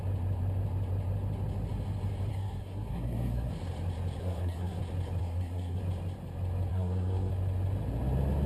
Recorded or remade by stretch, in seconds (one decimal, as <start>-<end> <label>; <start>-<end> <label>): 0.0-2.3 recorded; 2.3-3.5 remade; 3.5-4.2 recorded; 4.2-4.8 remade; 4.8-5.2 recorded; 5.2-5.8 remade; 5.8-6.7 recorded; 6.7-7.3 remade; 7.3-8.5 recorded